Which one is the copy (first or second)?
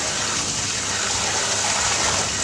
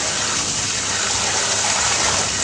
second